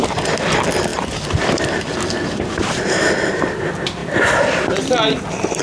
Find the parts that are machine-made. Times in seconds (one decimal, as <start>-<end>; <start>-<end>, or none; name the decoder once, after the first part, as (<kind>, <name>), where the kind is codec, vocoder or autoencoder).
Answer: 0.9-2.8 (vocoder, BigVGAN v2)